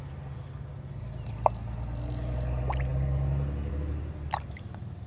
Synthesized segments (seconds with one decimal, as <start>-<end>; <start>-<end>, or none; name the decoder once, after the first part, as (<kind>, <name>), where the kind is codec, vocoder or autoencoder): none